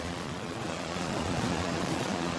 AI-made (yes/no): yes